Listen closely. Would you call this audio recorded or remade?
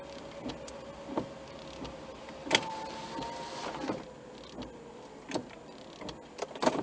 recorded